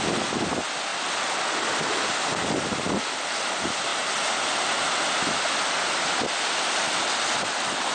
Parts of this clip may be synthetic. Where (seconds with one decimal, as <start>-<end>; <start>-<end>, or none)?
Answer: none